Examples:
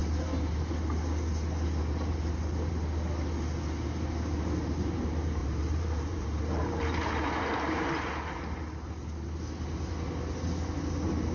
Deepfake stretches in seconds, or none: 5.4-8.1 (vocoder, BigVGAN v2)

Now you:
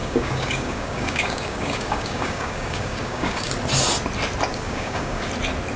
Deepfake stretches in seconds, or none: 0.0-3.5 (codec, DAC); 4.5-5.3

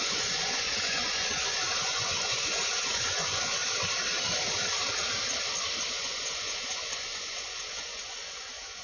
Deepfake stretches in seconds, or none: 0.0-3.6 (vocoder, Vocos); 5.9-8.8

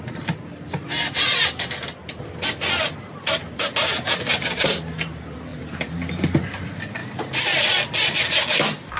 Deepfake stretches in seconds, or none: 5.5-6.6 (vocoder, BigVGAN v2)

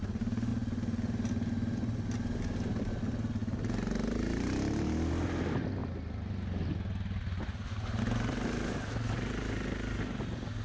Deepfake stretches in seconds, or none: none

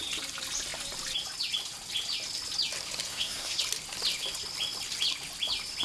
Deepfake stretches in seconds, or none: 3.1-3.6 (codec, SNAC)

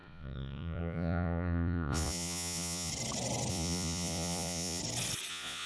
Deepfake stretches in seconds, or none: 0.0-2.9 (vocoder, Vocos); 3.5-4.8; 5.3-5.7